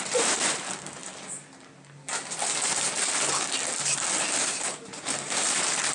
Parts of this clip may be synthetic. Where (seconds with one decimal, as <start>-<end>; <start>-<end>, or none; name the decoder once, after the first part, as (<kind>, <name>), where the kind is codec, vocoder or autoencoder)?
0.0-1.0 (vocoder, BigVGAN v2); 4.5-5.9